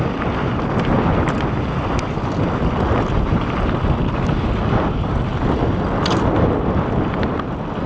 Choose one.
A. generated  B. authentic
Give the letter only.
B